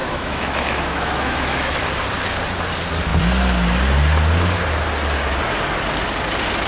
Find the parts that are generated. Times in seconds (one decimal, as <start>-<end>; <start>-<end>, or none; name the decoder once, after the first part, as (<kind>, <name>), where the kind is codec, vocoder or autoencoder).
0.0-1.8 (autoencoder, DAC-VAE)